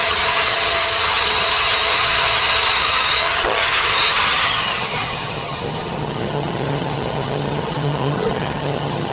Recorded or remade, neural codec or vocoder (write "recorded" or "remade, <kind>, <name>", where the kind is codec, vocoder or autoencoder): remade, vocoder, HiFi-GAN